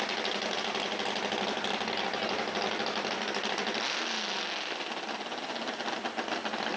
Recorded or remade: recorded